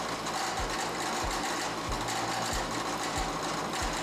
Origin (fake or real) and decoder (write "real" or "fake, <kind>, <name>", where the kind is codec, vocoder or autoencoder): real